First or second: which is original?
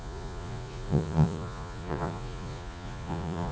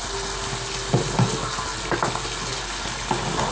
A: second